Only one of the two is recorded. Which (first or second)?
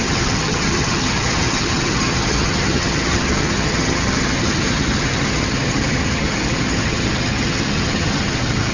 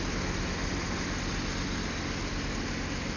second